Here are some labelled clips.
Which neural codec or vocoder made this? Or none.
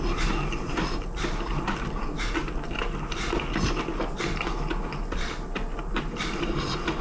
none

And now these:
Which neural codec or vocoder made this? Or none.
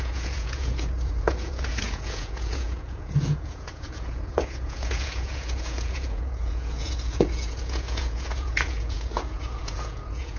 vocoder, Vocos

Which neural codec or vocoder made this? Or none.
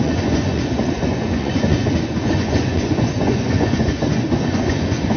vocoder, Vocos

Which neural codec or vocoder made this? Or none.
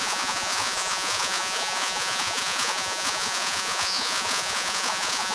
vocoder, Vocos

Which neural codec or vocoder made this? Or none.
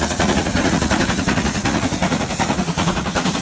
vocoder, Vocos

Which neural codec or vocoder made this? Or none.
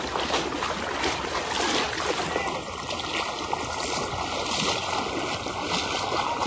none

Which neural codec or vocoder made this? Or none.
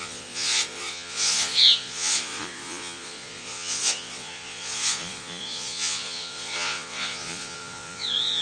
vocoder, Vocos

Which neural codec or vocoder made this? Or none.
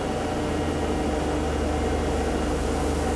none